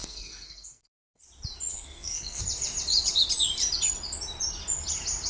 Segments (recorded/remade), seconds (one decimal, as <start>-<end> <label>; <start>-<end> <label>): 0.0-1.2 remade; 1.2-1.7 recorded; 1.7-2.4 remade; 2.4-5.3 recorded